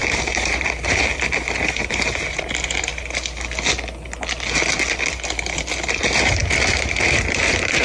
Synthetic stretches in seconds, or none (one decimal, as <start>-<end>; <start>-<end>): 0.0-2.9; 6.0-7.8